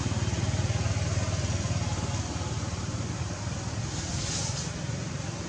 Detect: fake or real real